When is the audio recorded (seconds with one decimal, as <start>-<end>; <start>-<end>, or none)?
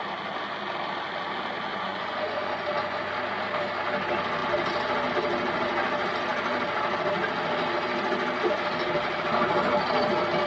0.0-1.7; 3.1-10.5